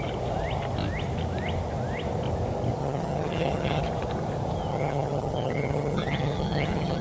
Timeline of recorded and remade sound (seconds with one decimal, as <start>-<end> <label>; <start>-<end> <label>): 0.0-2.8 recorded; 2.8-3.8 remade; 3.8-4.7 recorded; 4.7-7.0 remade